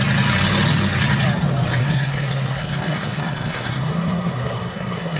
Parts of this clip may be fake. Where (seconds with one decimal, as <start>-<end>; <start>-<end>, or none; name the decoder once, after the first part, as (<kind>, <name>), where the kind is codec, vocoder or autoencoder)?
1.8-5.2 (codec, SNAC)